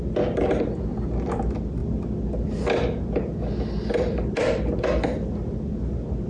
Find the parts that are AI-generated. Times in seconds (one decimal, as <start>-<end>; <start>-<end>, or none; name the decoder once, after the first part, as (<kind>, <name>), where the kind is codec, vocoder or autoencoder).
none